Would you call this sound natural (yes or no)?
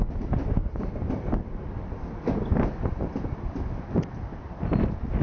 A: yes